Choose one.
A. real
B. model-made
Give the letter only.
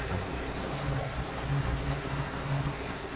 B